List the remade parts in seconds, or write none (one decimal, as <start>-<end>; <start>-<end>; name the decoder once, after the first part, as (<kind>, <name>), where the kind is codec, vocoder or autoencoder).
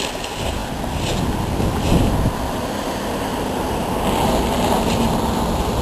none